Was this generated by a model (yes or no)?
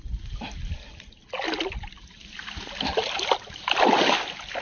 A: no